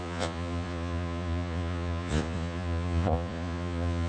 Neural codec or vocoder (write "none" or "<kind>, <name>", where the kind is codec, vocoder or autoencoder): vocoder, Vocos